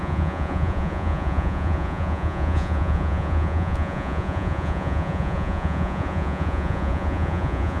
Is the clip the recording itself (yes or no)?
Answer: no